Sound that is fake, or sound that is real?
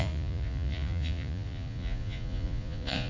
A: fake